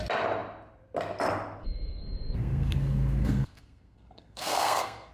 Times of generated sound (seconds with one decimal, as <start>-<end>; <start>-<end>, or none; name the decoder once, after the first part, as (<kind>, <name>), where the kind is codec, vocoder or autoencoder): 1.6-5.1 (codec, SNAC)